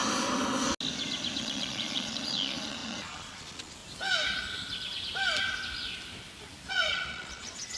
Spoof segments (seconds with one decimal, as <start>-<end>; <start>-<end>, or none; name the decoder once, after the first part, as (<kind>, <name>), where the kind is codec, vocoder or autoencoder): 1.4-3.8 (vocoder, Vocos); 6.7-7.8